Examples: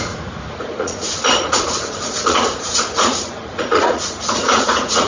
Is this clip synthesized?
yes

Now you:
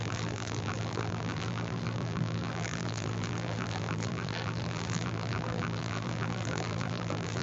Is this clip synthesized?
yes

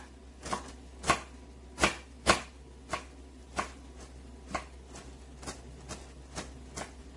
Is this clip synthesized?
no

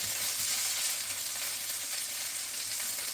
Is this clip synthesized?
no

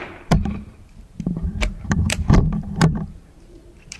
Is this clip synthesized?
yes